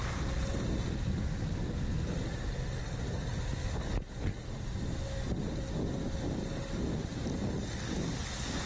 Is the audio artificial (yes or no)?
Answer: no